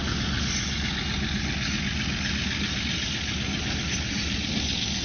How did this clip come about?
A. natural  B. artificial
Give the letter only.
A